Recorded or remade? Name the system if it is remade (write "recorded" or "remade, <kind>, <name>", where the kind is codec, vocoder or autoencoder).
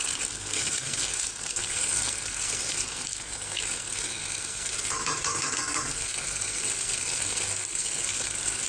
remade, codec, SNAC